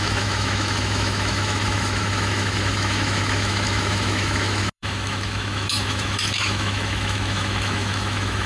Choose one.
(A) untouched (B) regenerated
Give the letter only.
B